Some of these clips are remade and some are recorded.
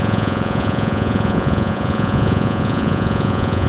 remade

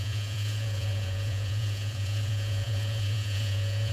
remade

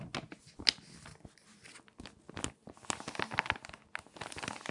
recorded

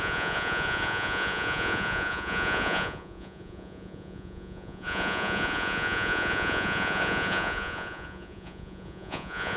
remade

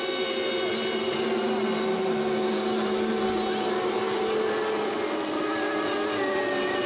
recorded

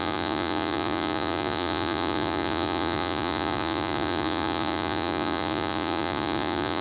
remade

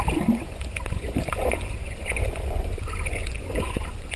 remade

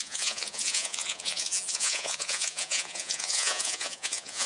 remade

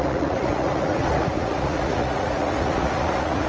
remade